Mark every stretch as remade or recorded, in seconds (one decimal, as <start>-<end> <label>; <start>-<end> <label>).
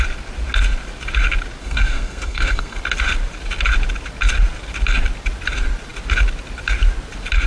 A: 0.0-1.6 recorded; 1.6-2.8 remade; 2.8-7.5 recorded